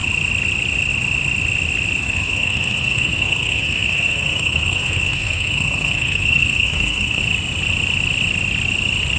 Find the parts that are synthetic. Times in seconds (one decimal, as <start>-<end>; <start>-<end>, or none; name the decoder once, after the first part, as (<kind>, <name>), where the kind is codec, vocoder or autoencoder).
2.0-7.2 (codec, SNAC)